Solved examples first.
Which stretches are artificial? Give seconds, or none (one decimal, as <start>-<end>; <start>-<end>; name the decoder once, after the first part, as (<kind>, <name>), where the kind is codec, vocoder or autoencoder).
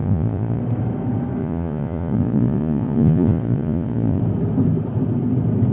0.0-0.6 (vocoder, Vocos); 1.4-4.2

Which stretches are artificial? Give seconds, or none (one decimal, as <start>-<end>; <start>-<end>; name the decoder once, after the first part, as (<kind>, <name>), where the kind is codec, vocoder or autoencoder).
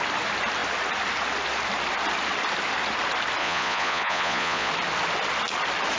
3.4-4.7 (vocoder, Vocos)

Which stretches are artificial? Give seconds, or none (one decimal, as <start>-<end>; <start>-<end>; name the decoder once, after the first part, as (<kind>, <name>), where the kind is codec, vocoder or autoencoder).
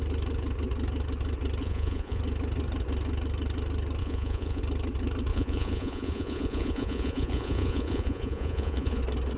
1.6-2.2 (vocoder, Vocos); 4.0-4.6; 5.3-9.0